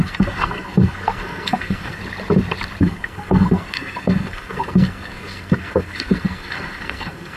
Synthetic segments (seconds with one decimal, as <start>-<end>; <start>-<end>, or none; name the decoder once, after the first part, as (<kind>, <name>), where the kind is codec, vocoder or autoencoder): 0.0-2.0 (codec, SNAC); 2.8-7.4